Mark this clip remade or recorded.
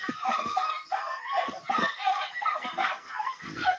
remade